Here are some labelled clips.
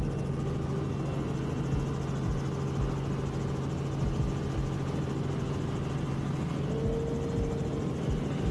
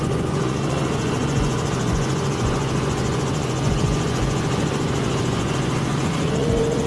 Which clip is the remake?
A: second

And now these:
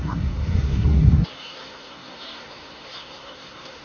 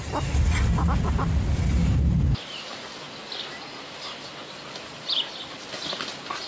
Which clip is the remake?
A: first